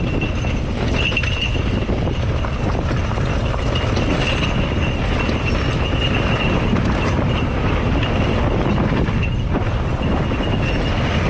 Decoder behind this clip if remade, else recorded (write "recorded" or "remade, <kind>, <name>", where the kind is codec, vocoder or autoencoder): recorded